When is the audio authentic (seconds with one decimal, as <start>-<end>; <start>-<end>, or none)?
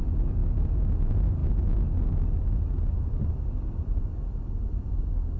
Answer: 0.0-5.4